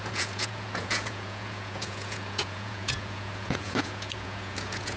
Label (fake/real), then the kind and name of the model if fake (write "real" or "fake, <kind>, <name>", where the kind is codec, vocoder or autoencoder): fake, vocoder, Vocos